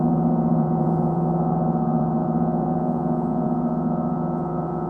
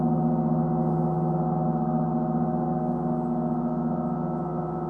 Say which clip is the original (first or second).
second